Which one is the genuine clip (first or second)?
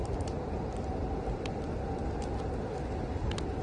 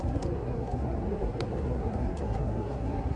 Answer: first